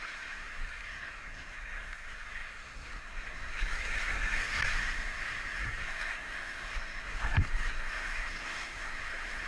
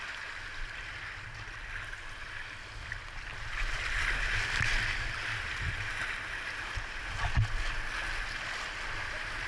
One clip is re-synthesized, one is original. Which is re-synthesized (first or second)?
first